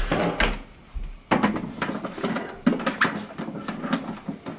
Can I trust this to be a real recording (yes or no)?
yes